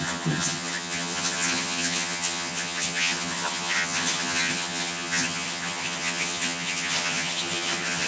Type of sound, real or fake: fake